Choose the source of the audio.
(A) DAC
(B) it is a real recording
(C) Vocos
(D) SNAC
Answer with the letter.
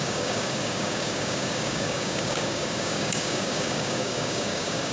A